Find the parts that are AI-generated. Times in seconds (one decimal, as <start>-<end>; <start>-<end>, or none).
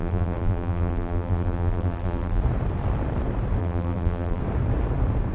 0.0-2.4; 3.6-4.4